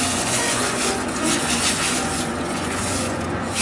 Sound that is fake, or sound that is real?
fake